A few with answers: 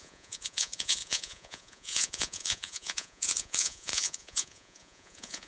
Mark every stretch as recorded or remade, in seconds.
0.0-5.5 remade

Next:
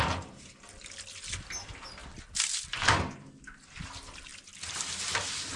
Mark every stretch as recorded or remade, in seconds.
0.0-5.6 recorded

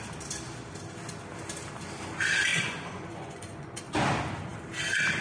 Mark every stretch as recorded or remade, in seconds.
0.0-2.5 recorded; 2.5-3.8 remade; 3.8-5.2 recorded

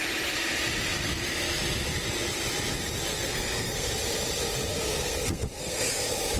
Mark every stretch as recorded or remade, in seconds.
0.0-3.1 recorded; 3.1-3.9 remade; 3.9-4.7 recorded; 4.7-5.9 remade; 5.9-6.4 recorded

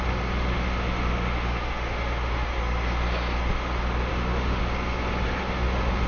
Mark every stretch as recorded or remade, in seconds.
0.0-0.5 recorded; 0.5-2.6 remade; 2.6-4.1 recorded; 4.1-4.6 remade; 4.6-5.4 recorded; 5.4-6.1 remade